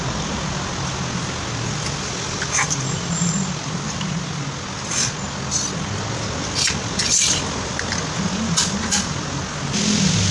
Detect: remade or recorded recorded